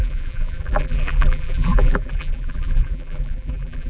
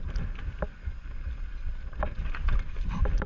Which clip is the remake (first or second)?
first